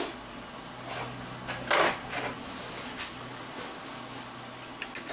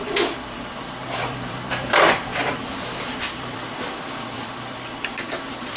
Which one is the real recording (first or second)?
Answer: first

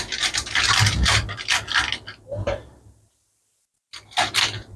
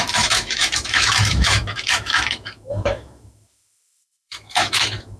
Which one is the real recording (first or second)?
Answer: first